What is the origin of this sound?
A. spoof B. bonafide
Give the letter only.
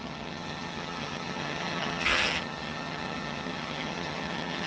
A